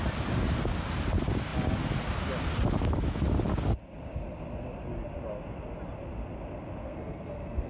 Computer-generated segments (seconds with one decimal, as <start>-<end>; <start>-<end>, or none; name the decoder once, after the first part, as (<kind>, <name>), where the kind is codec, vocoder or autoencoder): 6.8-7.7 (codec, SNAC)